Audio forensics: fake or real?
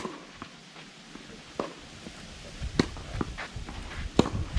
real